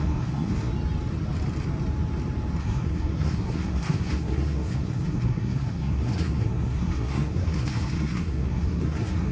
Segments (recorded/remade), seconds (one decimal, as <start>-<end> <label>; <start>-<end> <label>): 0.0-0.7 remade; 0.7-2.6 recorded; 2.6-9.3 remade